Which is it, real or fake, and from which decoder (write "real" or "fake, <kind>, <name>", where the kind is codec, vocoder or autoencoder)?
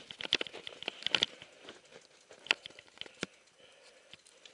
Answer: real